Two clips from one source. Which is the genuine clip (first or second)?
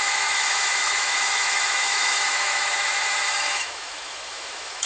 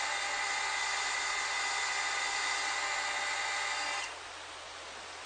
second